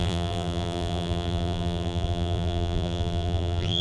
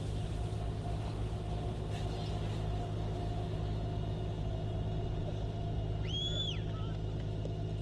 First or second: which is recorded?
second